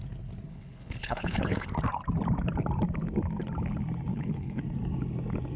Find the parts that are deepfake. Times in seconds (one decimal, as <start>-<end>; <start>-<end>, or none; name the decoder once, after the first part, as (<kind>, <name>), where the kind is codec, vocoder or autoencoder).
0.5-1.7 (codec, HILCodec); 4.1-4.6